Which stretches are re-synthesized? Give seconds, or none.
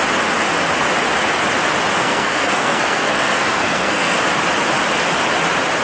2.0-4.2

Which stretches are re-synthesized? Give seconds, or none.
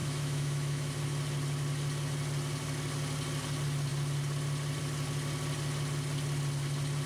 0.0-0.9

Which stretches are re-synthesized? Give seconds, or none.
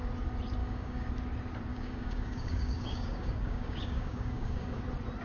0.6-1.1; 1.7-4.8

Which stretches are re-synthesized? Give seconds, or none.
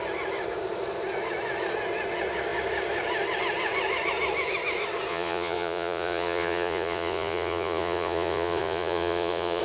5.1-9.6